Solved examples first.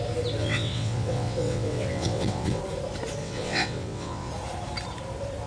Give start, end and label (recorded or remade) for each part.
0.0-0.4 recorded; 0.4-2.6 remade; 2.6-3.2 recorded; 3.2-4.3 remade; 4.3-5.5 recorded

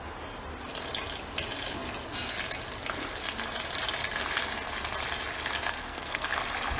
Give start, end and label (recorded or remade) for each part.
0.0-5.7 recorded; 5.7-6.3 remade; 6.3-6.8 recorded

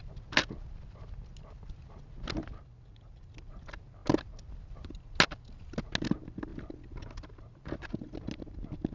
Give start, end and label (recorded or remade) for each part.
0.0-8.9 recorded

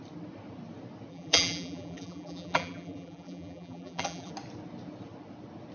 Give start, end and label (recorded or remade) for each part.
0.0-1.1 recorded; 1.1-4.3 remade; 4.3-5.7 recorded

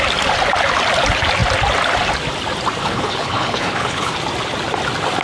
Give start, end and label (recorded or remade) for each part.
0.0-2.8 recorded; 2.8-4.1 remade; 4.1-5.2 recorded

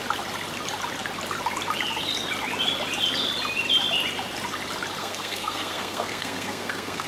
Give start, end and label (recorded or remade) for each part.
0.0-5.0 recorded; 5.0-7.1 remade